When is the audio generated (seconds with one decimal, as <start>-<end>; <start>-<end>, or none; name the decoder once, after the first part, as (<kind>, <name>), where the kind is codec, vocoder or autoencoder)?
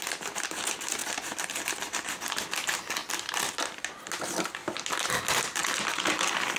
1.0-2.1 (vocoder, BigVGAN v2); 3.0-3.6